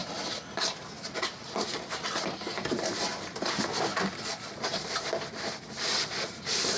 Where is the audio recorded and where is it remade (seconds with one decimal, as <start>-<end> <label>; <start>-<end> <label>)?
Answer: 0.0-0.6 recorded; 0.6-6.8 remade